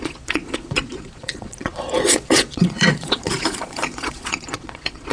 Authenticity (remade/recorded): remade